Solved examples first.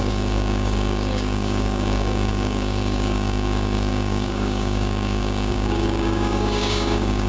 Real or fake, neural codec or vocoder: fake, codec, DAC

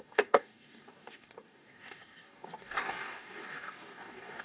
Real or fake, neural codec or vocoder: fake, codec, DAC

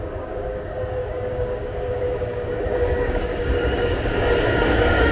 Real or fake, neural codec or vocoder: fake, codec, DAC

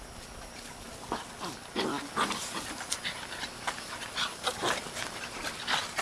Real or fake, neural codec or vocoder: real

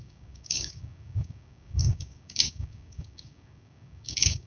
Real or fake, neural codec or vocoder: fake, codec, DAC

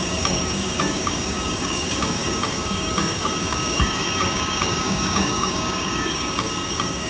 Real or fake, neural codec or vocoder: fake, codec, DAC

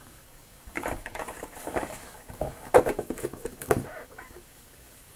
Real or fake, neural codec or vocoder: fake, codec, DAC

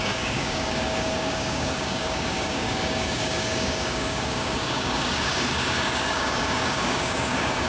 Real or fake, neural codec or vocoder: fake, codec, DAC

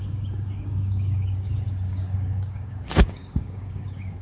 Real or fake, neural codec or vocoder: fake, codec, DAC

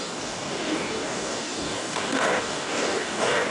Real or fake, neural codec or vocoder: fake, codec, DAC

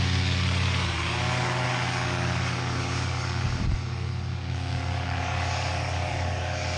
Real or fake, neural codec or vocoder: fake, codec, DAC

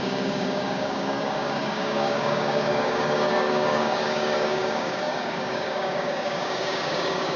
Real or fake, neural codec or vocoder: fake, codec, DAC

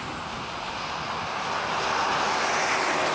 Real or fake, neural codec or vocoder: real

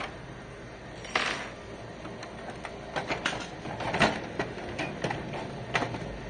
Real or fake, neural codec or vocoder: real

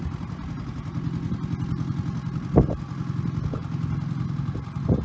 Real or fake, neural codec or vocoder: real